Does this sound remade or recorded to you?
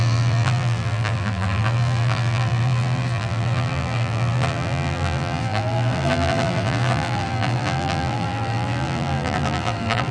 remade